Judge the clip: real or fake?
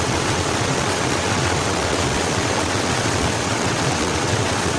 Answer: fake